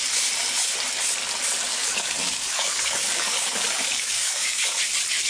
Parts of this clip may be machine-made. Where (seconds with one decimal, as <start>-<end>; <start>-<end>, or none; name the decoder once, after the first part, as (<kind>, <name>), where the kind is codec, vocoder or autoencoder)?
1.7-4.8 (codec, DAC)